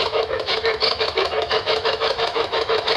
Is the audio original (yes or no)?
no